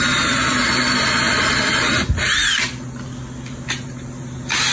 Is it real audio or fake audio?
real